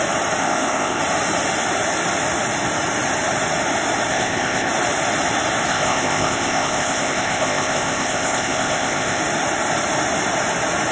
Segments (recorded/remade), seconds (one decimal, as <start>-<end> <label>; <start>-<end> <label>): 0.0-0.4 recorded; 0.4-1.0 remade; 1.0-4.1 recorded; 4.1-4.7 remade; 4.7-5.7 recorded; 5.7-9.2 remade; 9.2-10.9 recorded